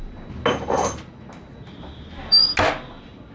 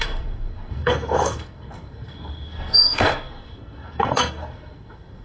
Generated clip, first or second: second